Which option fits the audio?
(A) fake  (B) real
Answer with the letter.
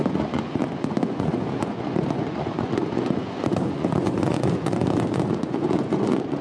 A